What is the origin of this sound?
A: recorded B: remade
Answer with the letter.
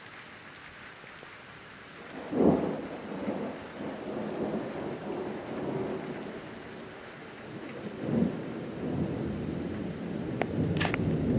A